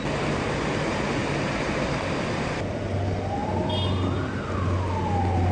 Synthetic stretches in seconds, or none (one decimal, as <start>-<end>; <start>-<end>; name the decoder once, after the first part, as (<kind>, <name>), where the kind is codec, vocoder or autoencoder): 3.4-4.4 (vocoder, BigVGAN v2)

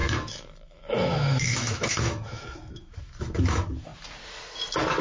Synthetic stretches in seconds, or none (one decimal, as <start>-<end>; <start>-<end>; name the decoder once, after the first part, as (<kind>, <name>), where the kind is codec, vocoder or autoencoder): 0.0-3.9 (autoencoder, DAC-VAE)

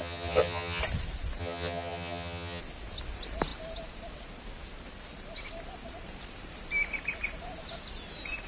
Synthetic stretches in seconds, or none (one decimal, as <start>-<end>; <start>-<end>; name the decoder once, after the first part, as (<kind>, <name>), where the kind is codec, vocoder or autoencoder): 0.0-0.8 (vocoder, HiFi-GAN); 1.4-2.6

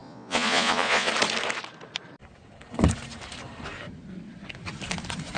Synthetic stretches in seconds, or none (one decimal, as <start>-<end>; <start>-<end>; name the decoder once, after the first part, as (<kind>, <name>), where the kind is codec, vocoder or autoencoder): 0.0-1.1 (vocoder, Vocos)

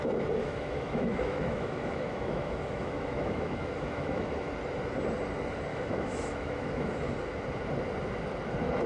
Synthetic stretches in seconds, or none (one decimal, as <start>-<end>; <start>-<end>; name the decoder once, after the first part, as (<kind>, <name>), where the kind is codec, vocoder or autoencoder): 0.4-4.5 (autoencoder, DAC-VAE); 5.7-6.9

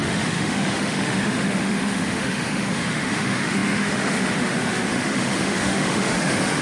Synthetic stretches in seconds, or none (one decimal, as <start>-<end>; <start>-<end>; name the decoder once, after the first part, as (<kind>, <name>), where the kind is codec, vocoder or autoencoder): 0.0-6.6 (autoencoder, DAC-VAE)

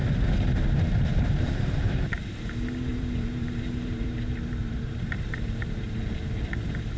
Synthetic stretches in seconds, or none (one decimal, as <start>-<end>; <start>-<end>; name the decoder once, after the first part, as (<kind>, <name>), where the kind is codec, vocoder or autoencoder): 1.1-2.2 (vocoder, BigVGAN v2); 2.9-5.8